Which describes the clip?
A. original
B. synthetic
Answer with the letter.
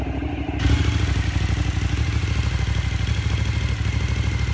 A